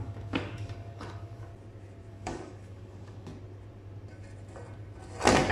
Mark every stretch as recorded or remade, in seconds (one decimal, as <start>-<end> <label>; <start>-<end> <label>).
0.0-1.5 remade; 1.5-2.1 recorded; 2.1-3.3 remade; 3.3-5.5 recorded